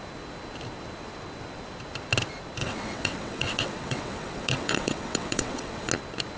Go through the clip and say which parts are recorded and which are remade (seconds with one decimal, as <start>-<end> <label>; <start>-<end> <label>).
0.0-2.6 recorded; 2.6-5.9 remade; 5.9-6.4 recorded